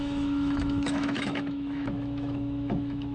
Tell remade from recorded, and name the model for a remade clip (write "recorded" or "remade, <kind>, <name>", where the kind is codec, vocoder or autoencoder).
remade, autoencoder, DAC-VAE